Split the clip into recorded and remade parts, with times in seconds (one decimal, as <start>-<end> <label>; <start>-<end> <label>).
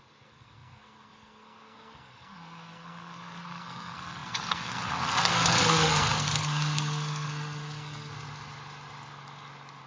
0.0-8.1 remade; 8.1-9.9 recorded